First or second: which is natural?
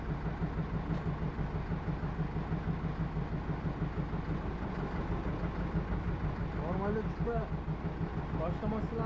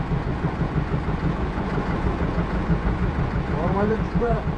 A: first